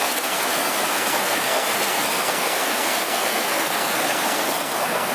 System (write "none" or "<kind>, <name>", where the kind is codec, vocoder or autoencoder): codec, SNAC